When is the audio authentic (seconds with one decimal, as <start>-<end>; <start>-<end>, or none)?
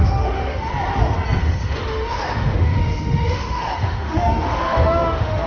0.7-1.4